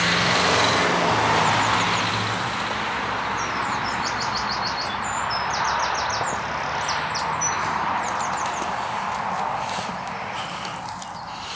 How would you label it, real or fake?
real